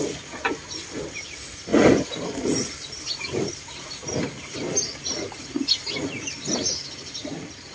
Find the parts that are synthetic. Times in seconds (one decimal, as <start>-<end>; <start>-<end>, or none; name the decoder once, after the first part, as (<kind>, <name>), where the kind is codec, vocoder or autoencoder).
none

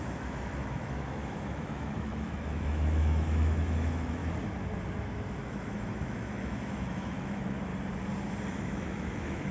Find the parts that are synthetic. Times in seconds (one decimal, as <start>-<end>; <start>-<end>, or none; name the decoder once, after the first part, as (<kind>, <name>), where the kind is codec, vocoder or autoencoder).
0.0-4.2 (autoencoder, DAC-VAE); 5.4-7.7; 8.5-9.5

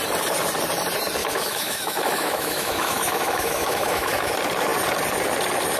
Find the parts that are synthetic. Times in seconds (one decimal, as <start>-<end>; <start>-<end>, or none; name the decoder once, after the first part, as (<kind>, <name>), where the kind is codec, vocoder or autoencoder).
1.2-4.3 (autoencoder, DAC-VAE)

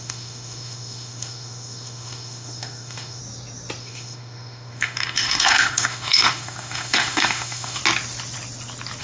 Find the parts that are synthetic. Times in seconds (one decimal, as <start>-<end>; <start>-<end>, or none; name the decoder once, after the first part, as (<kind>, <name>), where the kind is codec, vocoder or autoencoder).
0.0-3.2 (autoencoder, DAC-VAE); 3.8-7.8

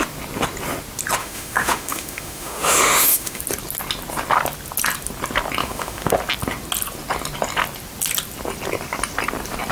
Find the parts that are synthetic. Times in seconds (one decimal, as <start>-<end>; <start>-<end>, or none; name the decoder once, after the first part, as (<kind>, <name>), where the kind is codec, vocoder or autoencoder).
1.2-3.4 (autoencoder, DAC-VAE); 5.6-6.1

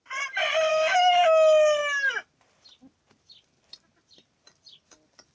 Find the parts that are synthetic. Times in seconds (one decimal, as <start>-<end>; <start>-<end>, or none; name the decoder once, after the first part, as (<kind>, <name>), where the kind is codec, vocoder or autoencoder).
0.7-1.2 (autoencoder, DAC-VAE)

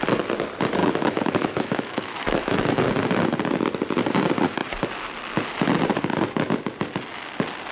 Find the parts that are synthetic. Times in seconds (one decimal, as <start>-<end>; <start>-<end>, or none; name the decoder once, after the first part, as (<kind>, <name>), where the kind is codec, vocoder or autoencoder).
0.8-2.8 (autoencoder, DAC-VAE)

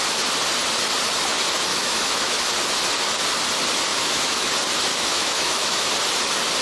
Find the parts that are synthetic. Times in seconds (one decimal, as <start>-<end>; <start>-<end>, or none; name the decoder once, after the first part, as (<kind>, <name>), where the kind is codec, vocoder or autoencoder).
1.7-2.5 (autoencoder, DAC-VAE); 3.9-4.5; 4.9-5.9